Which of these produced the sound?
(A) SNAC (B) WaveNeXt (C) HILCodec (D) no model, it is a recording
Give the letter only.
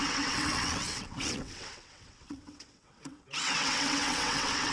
B